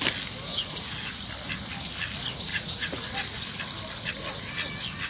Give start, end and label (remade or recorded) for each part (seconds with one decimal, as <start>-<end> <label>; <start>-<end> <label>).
0.0-0.5 recorded; 0.5-1.3 remade; 1.3-2.5 recorded; 2.5-3.6 remade; 3.6-5.1 recorded